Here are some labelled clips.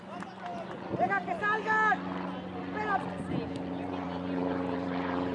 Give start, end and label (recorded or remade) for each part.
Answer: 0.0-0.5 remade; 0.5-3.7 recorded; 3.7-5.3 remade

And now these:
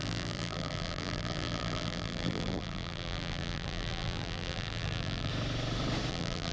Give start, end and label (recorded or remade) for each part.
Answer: 0.0-5.3 remade; 5.3-6.1 recorded; 6.1-6.5 remade

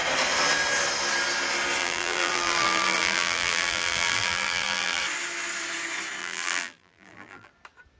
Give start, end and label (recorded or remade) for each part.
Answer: 0.0-1.8 recorded; 1.8-5.0 remade; 5.0-6.2 recorded; 6.2-7.5 remade; 7.5-8.0 recorded

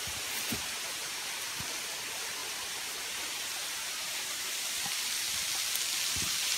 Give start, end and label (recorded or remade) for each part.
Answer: 0.0-6.6 recorded